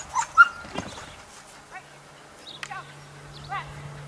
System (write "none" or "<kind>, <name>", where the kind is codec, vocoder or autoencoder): none